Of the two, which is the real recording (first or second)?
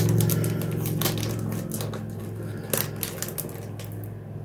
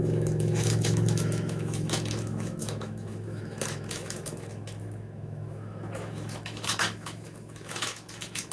first